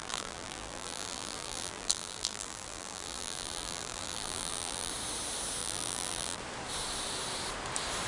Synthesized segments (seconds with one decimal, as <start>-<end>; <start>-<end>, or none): 0.0-4.9; 5.6-6.4